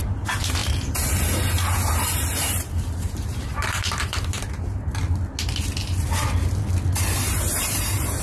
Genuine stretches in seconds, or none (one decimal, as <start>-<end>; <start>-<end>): 0.0-0.6; 4.9-5.8; 6.6-7.5